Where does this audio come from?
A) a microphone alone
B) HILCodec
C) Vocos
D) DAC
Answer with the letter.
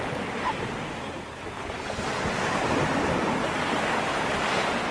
A